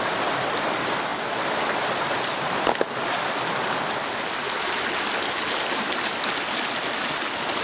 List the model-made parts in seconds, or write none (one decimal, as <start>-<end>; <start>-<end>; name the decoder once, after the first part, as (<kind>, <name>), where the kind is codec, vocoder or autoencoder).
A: none